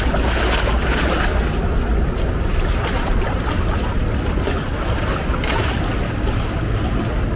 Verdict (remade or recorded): recorded